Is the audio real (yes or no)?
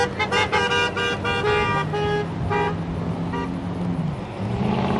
yes